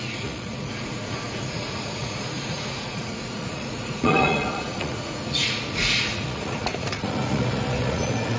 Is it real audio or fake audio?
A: fake